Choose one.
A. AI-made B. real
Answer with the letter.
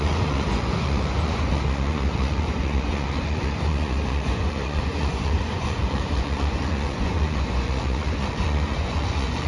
A